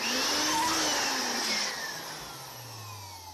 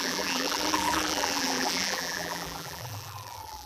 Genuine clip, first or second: first